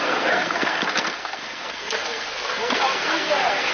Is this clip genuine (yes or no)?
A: no